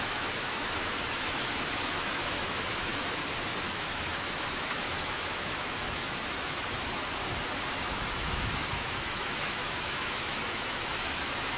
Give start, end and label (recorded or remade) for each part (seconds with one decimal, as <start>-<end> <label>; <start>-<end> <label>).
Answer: 0.0-2.9 remade; 2.9-3.7 recorded; 3.7-7.0 remade; 7.0-7.7 recorded; 7.7-11.6 remade